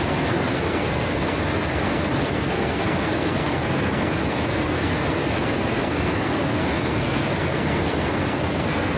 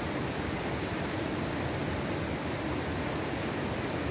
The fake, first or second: first